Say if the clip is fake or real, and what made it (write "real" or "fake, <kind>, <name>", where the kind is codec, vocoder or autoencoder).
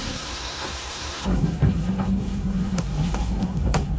fake, codec, SNAC